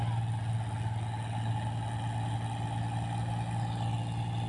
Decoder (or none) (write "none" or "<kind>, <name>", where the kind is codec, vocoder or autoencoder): none